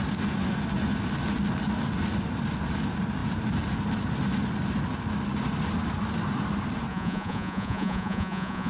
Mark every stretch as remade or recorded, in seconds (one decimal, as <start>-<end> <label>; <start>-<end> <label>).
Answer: 0.0-6.9 recorded; 6.9-8.7 remade

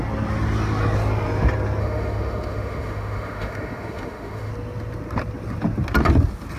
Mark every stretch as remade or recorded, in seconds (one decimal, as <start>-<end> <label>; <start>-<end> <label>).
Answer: 0.0-1.8 recorded; 1.8-4.5 remade; 4.5-6.6 recorded

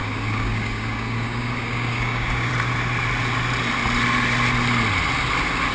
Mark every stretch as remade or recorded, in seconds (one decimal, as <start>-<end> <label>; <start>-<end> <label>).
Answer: 0.0-2.5 remade; 2.5-5.7 recorded

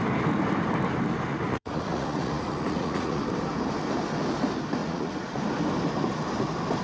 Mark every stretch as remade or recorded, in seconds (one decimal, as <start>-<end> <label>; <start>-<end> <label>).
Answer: 0.0-1.3 recorded; 1.3-3.2 remade; 3.2-4.8 recorded; 4.8-5.4 remade; 5.4-6.8 recorded